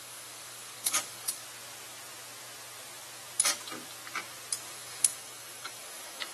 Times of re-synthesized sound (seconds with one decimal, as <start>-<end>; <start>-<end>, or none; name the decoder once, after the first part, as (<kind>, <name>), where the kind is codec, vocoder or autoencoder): 0.0-1.4 (codec, DAC); 4.6-6.3